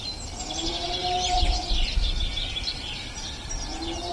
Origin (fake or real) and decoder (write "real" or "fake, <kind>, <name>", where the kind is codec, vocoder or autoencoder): fake, vocoder, BigVGAN v2